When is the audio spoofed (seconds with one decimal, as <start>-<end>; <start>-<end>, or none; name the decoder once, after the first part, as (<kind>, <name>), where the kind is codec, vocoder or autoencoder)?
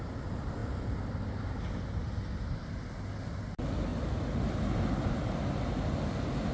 none